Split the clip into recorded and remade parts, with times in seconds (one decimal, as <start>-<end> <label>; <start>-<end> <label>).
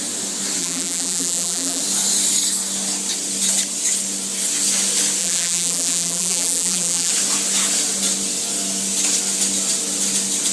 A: 0.0-0.6 recorded; 0.6-1.8 remade; 1.8-5.2 recorded; 5.2-7.1 remade; 7.1-10.5 recorded